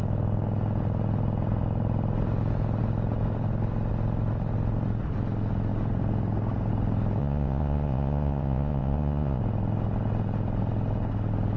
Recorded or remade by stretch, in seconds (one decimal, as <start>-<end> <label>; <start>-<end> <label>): 0.0-7.2 recorded; 7.2-9.4 remade; 9.4-11.6 recorded